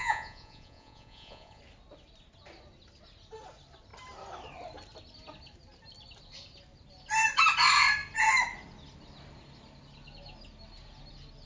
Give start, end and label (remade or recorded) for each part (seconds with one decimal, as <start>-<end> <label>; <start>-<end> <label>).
0.0-1.6 remade; 1.6-11.5 recorded